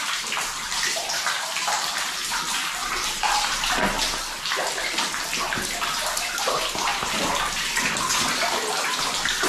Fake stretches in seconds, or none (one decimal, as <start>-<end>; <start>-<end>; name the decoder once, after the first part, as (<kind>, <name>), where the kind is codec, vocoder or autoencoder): 2.3-3.7 (vocoder, BigVGAN v2)